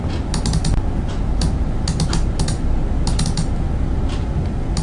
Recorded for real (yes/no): yes